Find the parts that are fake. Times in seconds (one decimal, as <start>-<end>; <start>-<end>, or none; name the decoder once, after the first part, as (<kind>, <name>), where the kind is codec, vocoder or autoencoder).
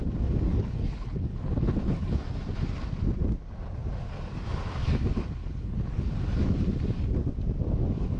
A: 0.5-2.2 (codec, HILCodec); 5.4-6.1